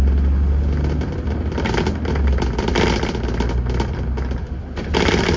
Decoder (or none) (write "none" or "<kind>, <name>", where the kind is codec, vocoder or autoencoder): none